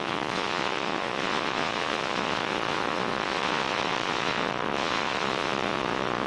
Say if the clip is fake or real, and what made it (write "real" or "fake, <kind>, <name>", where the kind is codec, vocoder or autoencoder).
fake, vocoder, Vocos